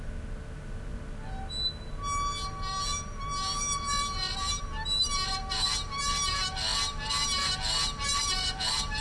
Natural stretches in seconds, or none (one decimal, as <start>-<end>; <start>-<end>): 0.0-9.0